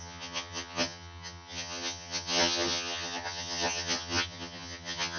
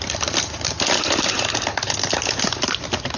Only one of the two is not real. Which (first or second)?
first